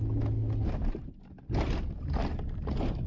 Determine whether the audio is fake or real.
real